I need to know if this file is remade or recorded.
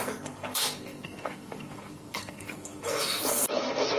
remade